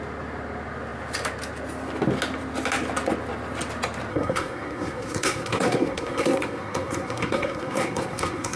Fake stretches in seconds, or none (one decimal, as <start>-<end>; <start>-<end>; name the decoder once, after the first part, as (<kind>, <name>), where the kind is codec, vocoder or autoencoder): 4.1-8.6 (codec, SNAC)